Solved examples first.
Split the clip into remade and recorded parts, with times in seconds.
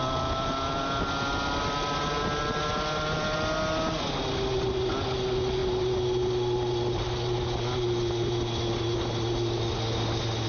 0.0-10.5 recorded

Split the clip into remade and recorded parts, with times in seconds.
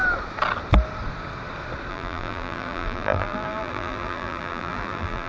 0.0-1.9 recorded; 1.9-5.3 remade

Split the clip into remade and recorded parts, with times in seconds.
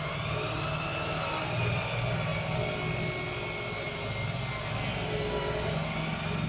0.0-6.5 recorded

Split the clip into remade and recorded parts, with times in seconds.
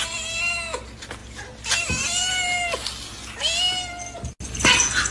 0.0-5.1 recorded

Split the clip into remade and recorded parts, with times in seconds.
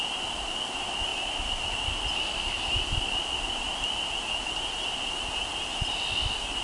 0.0-1.1 recorded; 1.1-5.1 remade; 5.1-5.7 recorded; 5.7-6.6 remade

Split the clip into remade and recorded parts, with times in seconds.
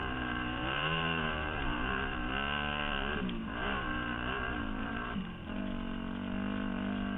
0.0-2.3 remade; 2.3-3.4 recorded; 3.4-5.6 remade; 5.6-7.2 recorded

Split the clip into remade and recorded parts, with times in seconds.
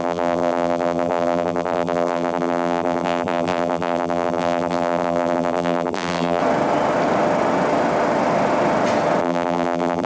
0.0-6.4 remade; 6.4-9.2 recorded; 9.2-10.1 remade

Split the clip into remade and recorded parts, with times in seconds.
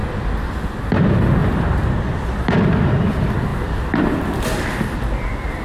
0.0-1.4 recorded; 1.4-2.6 remade; 2.6-3.5 recorded; 3.5-5.1 remade; 5.1-5.6 recorded